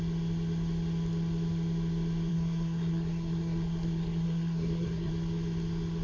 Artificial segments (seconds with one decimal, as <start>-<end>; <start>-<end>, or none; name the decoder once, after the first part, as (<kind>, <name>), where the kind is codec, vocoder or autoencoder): 2.3-5.1 (codec, SNAC)